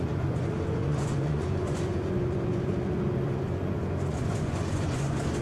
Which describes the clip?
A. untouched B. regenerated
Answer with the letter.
B